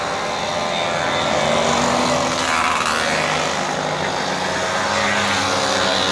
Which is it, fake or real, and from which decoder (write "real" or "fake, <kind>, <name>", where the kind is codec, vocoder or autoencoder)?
real